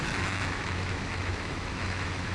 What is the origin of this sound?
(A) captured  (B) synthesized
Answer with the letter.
B